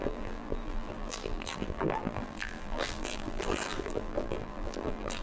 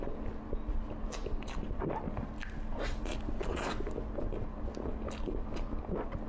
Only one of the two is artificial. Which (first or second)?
first